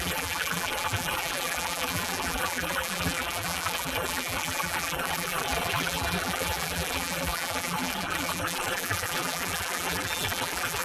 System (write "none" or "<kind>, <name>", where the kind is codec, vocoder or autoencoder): vocoder, BigVGAN v2